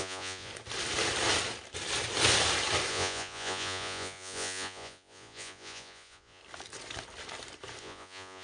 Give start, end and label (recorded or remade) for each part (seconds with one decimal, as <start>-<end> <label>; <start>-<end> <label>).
0.0-0.5 remade; 0.5-2.9 recorded; 2.9-6.4 remade; 6.4-7.8 recorded; 7.8-8.4 remade